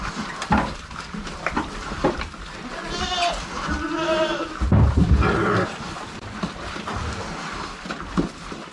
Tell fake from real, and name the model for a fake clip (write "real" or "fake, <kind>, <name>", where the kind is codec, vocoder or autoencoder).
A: real